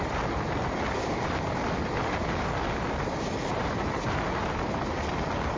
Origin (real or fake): real